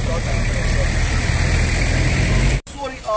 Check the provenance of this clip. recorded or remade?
remade